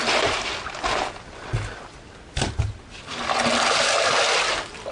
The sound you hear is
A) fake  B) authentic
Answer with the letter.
B